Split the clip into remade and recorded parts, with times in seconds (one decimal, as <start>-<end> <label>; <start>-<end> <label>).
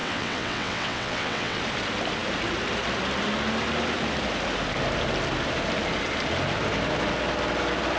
0.0-1.6 remade; 1.6-8.0 recorded